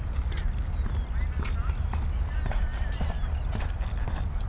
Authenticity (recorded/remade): recorded